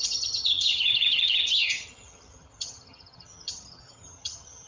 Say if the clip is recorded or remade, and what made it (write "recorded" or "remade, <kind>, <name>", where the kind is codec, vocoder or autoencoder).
remade, vocoder, HiFi-GAN